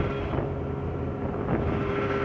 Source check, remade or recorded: recorded